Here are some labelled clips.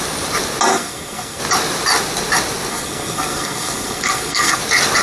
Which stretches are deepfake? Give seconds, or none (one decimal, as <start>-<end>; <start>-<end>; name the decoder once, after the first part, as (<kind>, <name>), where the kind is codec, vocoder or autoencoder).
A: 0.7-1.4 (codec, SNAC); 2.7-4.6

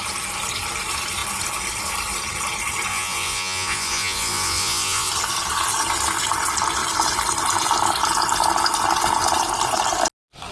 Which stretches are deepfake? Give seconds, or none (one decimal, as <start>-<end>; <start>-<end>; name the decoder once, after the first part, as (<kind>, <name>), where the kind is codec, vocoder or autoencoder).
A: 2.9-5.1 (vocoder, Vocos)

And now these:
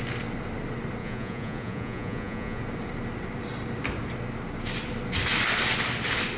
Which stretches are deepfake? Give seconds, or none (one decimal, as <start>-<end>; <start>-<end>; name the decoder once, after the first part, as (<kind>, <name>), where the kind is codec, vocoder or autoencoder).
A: 1.0-2.6 (vocoder, Vocos)